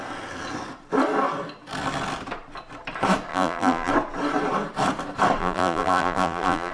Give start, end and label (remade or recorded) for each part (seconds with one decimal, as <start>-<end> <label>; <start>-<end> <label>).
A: 0.0-3.3 recorded; 3.3-3.9 remade; 3.9-5.4 recorded; 5.4-6.7 remade